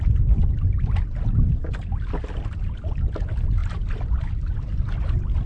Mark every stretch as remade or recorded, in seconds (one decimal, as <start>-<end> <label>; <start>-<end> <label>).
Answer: 0.0-5.5 recorded

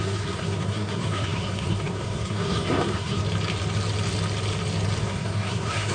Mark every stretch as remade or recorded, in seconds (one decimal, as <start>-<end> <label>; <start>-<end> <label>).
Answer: 0.0-3.2 remade; 3.2-5.0 recorded; 5.0-5.9 remade

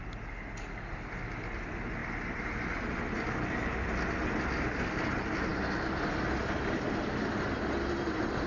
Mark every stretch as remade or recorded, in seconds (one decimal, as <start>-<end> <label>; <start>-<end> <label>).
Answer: 0.0-8.5 recorded

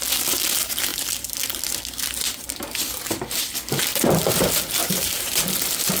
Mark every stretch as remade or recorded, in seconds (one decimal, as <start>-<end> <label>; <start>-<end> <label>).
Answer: 0.0-4.8 recorded; 4.8-5.4 remade; 5.4-6.0 recorded

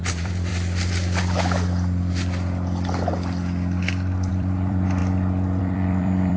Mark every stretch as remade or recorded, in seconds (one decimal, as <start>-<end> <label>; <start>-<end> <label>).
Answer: 0.0-0.5 remade; 0.5-4.3 recorded; 4.3-5.0 remade; 5.0-5.6 recorded; 5.6-6.4 remade

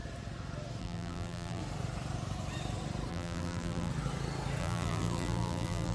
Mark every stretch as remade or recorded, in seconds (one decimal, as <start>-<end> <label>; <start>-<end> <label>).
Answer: 0.0-0.8 recorded; 0.8-1.6 remade; 1.6-3.1 recorded; 3.1-3.9 remade; 3.9-4.6 recorded; 4.6-5.9 remade

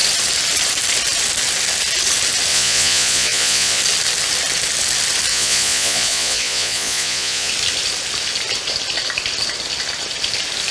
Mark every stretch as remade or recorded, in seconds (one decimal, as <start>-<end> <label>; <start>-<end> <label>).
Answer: 0.0-2.5 recorded; 2.5-3.8 remade; 3.8-5.3 recorded; 5.3-7.5 remade; 7.5-10.7 recorded